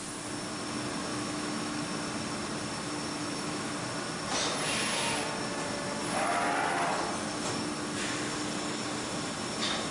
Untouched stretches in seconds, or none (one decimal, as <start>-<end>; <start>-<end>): 0.0-1.1; 1.8-3.2; 3.7-9.9